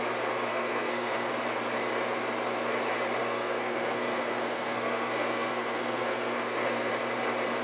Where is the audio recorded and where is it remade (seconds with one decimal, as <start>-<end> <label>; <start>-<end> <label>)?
0.0-0.5 recorded; 0.5-1.3 remade; 1.3-3.2 recorded; 3.2-6.9 remade; 6.9-7.6 recorded